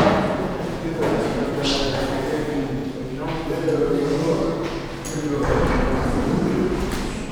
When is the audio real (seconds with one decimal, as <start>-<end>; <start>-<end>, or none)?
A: 1.3-2.2; 2.8-7.3